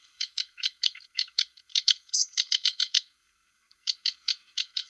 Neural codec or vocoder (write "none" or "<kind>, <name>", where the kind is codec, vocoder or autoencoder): codec, SNAC